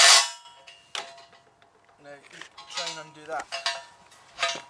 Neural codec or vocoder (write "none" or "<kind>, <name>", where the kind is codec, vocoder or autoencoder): none